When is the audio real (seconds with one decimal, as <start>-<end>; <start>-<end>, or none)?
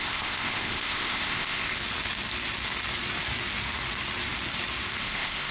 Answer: 1.8-5.0